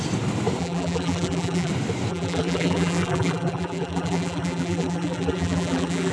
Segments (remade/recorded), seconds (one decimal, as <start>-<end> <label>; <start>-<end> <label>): 0.0-0.6 recorded; 0.6-1.7 remade; 1.7-2.1 recorded; 2.1-6.1 remade